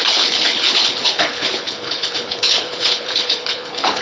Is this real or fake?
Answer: fake